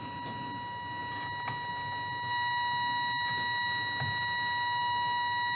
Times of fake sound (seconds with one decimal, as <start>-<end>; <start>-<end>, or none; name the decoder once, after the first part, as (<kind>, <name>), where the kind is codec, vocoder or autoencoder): none